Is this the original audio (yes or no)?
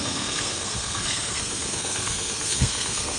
no